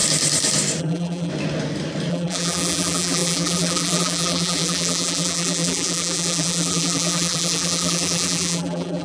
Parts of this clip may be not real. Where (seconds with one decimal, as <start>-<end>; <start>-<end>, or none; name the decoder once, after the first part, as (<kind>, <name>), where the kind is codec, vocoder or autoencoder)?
0.8-1.3 (vocoder, BigVGAN v2); 2.1-9.0